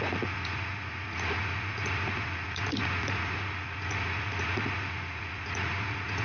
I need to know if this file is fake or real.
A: fake